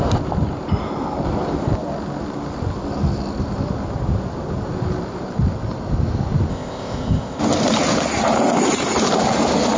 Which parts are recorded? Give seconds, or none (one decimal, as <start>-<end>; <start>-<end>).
0.0-6.5; 7.4-9.8